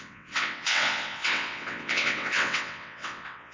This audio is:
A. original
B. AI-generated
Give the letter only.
B